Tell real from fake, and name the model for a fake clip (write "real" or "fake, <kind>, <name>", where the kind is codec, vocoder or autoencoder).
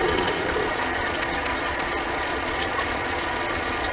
fake, vocoder, Vocos